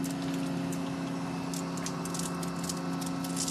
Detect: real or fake real